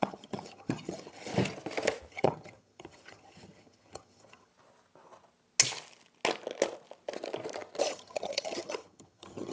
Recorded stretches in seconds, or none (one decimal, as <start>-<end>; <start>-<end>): 1.3-2.1; 4.5-7.8